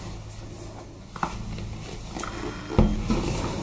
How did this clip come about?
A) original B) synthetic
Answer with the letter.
A